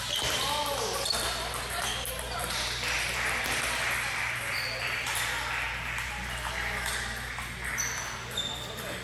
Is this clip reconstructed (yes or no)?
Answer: no